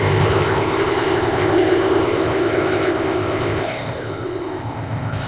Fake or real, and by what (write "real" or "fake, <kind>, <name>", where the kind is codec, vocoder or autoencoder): fake, codec, ZipCodec